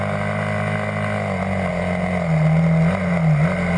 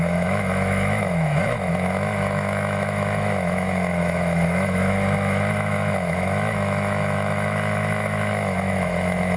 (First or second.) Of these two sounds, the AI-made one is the second